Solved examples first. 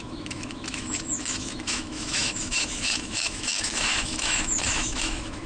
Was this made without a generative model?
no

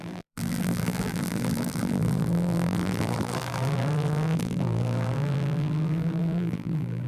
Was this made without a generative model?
no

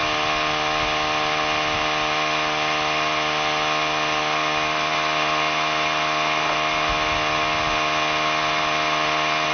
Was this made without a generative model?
yes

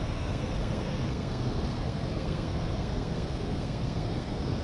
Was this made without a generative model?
no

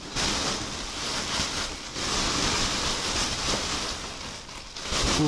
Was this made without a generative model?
yes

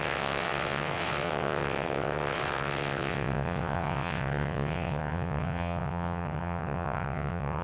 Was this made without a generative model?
no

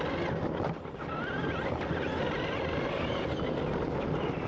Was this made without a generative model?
yes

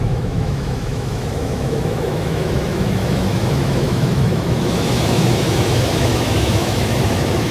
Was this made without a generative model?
no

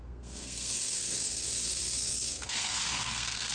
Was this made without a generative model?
no